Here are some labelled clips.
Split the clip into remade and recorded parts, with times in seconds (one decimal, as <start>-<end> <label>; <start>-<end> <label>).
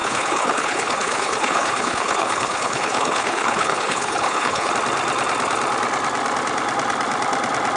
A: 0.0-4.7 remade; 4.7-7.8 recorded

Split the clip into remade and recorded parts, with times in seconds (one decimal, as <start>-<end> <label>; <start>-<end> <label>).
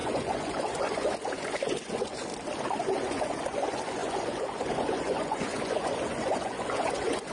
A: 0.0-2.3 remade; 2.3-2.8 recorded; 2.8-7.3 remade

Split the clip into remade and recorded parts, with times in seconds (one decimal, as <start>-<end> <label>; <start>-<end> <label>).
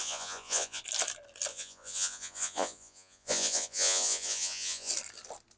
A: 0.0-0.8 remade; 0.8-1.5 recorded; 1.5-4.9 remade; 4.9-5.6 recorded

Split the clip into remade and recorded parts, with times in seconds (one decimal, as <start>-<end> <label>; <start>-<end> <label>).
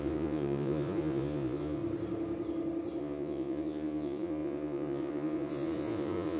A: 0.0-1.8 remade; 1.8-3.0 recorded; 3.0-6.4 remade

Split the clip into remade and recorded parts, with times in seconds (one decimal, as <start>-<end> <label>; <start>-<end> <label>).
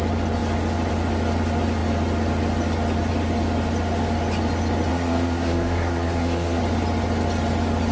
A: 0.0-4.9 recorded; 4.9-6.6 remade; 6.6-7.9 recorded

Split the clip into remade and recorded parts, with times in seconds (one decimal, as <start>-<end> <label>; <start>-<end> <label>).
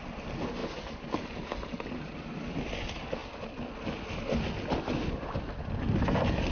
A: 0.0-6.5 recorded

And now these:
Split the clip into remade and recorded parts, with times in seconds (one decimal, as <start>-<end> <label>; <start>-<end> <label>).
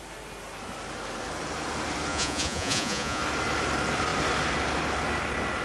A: 0.0-2.1 recorded; 2.1-3.2 remade; 3.2-5.6 recorded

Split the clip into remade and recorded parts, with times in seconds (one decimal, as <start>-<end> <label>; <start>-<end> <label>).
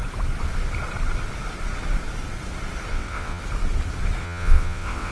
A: 0.0-2.9 recorded; 2.9-3.4 remade; 3.4-4.2 recorded; 4.2-5.1 remade